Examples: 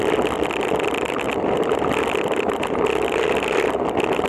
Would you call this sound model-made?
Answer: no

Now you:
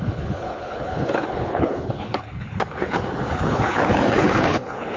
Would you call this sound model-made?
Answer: yes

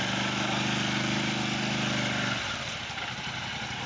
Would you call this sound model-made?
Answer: no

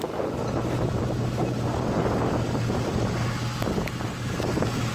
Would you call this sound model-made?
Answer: no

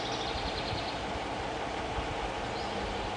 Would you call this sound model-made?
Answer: no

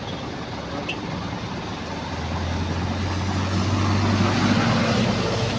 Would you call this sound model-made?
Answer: no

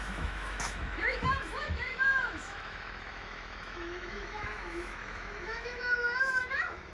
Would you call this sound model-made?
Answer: yes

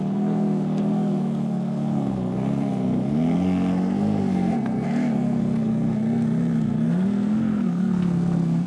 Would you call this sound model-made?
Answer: yes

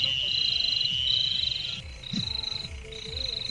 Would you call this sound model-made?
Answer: no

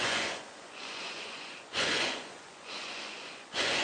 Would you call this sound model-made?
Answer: yes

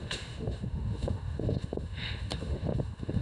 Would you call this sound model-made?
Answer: yes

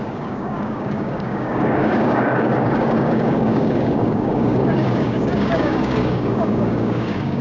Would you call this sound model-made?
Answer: yes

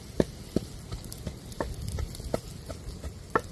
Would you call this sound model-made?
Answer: no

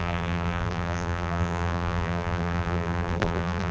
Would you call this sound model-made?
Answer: yes